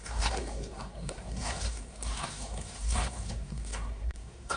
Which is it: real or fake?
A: fake